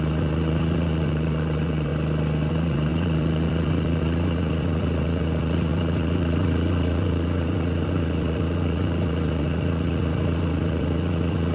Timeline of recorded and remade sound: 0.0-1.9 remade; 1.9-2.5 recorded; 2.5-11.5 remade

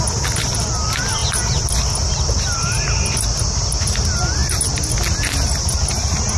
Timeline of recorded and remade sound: 0.0-6.4 recorded

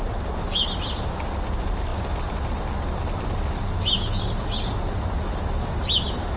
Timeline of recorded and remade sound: 0.0-6.4 recorded

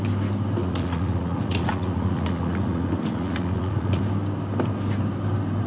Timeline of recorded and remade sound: 0.0-0.6 recorded; 0.6-4.0 remade; 4.0-5.7 recorded

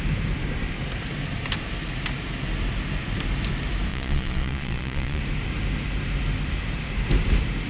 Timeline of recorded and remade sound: 0.0-3.9 recorded; 3.9-5.2 remade; 5.2-7.7 recorded

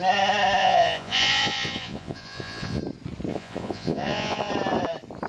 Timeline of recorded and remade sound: 0.0-0.6 recorded; 0.6-2.8 remade; 2.8-3.3 recorded; 3.3-4.5 remade; 4.5-5.3 recorded

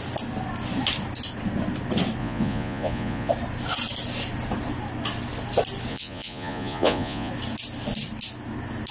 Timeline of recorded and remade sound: 0.0-2.2 recorded; 2.2-3.3 remade; 3.3-5.9 recorded; 5.9-7.3 remade; 7.3-8.9 recorded